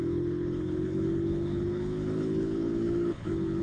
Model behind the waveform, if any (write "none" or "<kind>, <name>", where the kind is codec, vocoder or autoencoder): codec, HILCodec